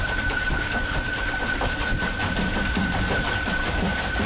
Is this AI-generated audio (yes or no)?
no